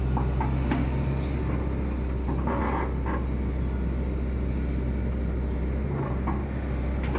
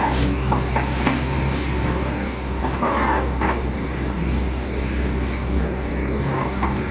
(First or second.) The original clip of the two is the first